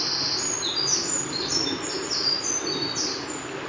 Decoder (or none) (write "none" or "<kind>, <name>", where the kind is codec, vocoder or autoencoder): none